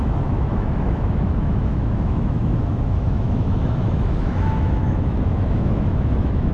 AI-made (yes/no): yes